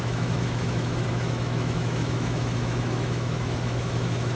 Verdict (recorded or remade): remade